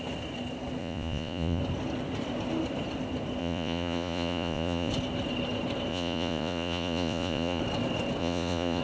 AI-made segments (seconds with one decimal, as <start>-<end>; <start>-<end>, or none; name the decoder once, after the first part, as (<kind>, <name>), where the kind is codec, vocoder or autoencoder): 0.8-1.6 (vocoder, Vocos); 3.4-4.9; 5.9-7.6; 8.2-8.8

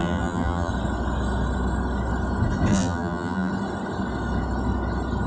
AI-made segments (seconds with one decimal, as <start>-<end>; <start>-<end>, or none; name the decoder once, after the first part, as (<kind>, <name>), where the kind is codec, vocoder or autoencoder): 0.0-0.7 (vocoder, BigVGAN v2); 2.7-3.5